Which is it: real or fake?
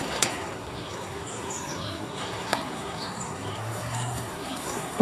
fake